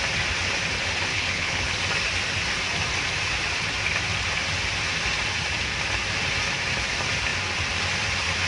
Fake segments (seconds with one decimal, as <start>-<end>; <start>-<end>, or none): 1.1-1.7